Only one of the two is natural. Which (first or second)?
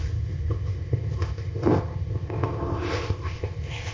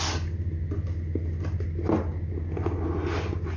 second